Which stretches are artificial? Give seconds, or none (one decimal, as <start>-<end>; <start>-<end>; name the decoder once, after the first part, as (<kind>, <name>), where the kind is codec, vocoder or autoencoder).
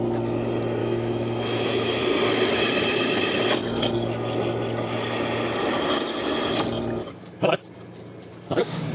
0.8-2.0 (autoencoder, DAC-VAE); 7.0-7.6